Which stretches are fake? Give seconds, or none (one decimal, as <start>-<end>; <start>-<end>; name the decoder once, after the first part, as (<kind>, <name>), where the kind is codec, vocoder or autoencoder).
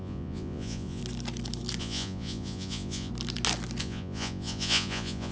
0.0-1.0 (vocoder, Vocos); 1.8-3.1; 3.8-5.3